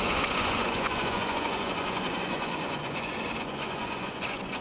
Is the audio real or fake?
fake